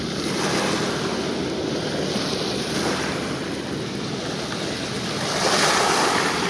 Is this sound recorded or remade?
recorded